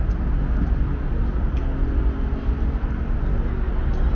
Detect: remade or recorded recorded